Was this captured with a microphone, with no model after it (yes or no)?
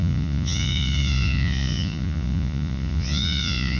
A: no